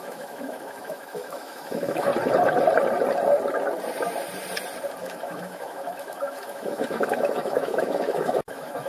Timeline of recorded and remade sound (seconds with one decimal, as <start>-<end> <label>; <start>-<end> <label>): 0.0-2.1 remade; 2.1-5.0 recorded; 5.0-8.9 remade